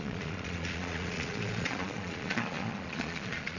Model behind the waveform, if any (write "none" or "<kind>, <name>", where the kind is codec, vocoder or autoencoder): vocoder, Vocos